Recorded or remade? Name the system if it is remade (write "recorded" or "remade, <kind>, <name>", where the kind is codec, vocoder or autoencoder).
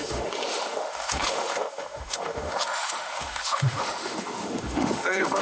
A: remade, autoencoder, DAC-VAE